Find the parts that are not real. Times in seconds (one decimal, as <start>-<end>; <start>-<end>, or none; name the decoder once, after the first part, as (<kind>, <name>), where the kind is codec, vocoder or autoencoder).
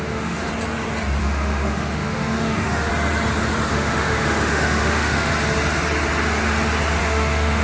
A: 0.0-0.5 (autoencoder, DAC-VAE); 1.2-2.9; 3.7-5.3; 7.0-7.6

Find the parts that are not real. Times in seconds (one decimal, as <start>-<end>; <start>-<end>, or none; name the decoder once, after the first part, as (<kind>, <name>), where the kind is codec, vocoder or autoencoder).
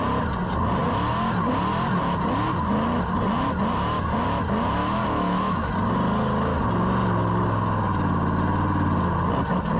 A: 4.8-5.7 (autoencoder, DAC-VAE)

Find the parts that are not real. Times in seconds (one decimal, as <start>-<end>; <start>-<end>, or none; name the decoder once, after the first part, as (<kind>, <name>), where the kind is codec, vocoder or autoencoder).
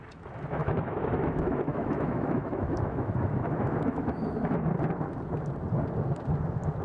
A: 0.6-4.7 (autoencoder, DAC-VAE)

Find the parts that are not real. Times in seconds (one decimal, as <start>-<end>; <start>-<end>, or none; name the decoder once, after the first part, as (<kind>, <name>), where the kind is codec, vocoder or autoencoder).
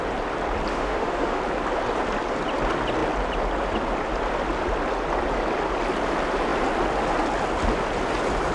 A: 0.7-1.4 (autoencoder, DAC-VAE)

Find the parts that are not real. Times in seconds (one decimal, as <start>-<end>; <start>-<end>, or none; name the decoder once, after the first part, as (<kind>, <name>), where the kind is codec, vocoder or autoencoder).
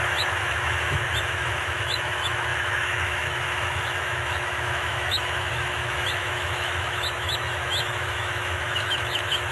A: 0.0-9.5 (autoencoder, DAC-VAE)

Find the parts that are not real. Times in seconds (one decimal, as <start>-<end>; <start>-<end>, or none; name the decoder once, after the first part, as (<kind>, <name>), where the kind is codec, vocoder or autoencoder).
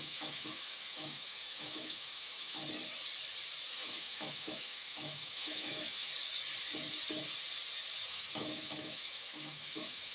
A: 0.0-2.6 (autoencoder, DAC-VAE); 3.7-6.1; 8.1-10.1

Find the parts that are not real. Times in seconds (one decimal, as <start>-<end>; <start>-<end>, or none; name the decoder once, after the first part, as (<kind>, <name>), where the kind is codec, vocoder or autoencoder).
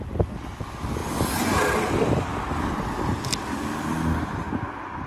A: none